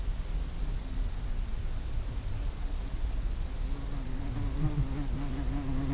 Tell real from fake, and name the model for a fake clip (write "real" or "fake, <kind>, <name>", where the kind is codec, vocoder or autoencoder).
real